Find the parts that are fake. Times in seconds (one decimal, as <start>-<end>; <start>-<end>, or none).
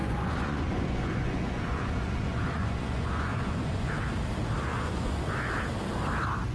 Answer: 0.0-3.9; 4.7-5.2